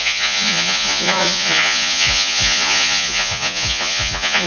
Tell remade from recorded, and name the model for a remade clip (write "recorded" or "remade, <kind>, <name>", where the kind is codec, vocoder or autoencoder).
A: remade, vocoder, Vocos